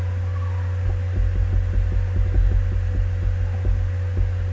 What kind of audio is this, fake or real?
real